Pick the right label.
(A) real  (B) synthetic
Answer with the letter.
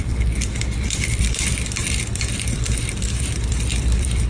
B